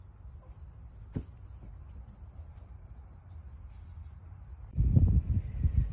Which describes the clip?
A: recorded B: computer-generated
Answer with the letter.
A